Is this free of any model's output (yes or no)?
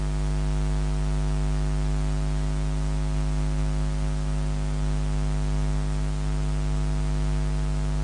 yes